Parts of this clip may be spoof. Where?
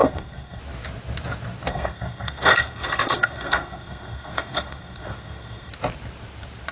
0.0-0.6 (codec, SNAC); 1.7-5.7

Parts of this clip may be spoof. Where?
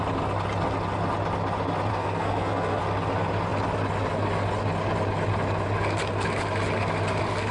1.9-2.8 (codec, SNAC)